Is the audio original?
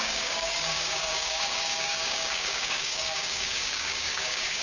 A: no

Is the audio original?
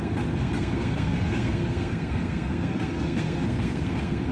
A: no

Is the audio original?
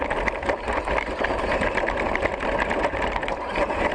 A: yes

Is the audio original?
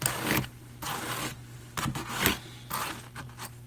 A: yes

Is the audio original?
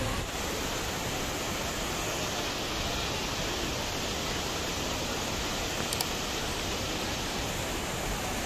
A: yes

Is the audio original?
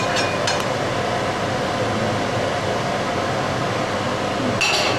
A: yes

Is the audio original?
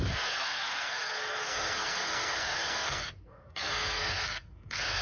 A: no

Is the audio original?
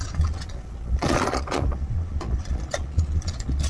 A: no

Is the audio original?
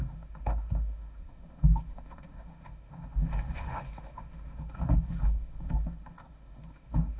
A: no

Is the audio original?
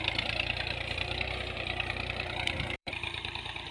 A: no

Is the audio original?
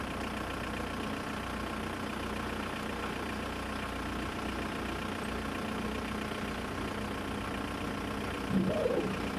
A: yes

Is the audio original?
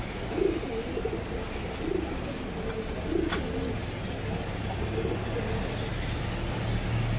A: yes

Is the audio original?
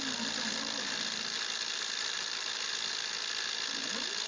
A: yes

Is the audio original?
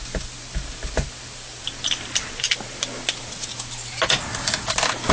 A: yes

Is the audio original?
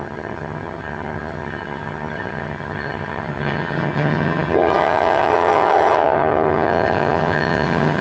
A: no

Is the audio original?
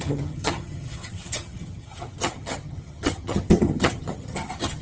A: no